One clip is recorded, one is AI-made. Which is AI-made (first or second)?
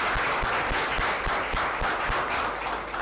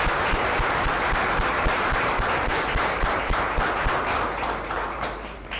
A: second